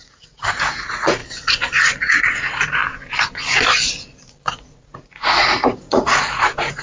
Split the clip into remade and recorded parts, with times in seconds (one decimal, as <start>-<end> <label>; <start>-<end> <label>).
0.0-1.2 remade; 1.2-2.0 recorded; 2.0-2.8 remade; 2.8-4.5 recorded; 4.5-6.8 remade